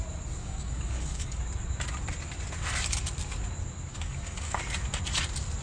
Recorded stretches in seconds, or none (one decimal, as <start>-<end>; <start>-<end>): 0.0-0.4; 1.4-3.9; 4.6-5.6